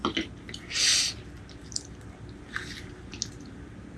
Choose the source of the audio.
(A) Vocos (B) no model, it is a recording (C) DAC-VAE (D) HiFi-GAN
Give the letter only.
B